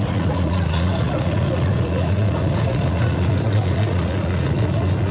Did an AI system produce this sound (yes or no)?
yes